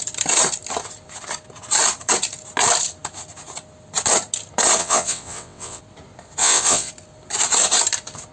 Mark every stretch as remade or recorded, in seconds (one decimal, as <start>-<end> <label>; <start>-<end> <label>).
0.0-4.8 recorded; 4.8-5.8 remade; 5.8-6.4 recorded; 6.4-6.9 remade; 6.9-8.3 recorded